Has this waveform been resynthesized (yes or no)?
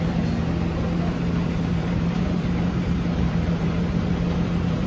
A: yes